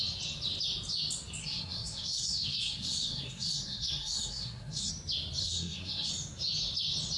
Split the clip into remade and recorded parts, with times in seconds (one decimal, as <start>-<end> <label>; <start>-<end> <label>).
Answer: 0.0-1.4 recorded; 1.4-4.9 remade; 4.9-5.4 recorded; 5.4-6.1 remade; 6.1-7.2 recorded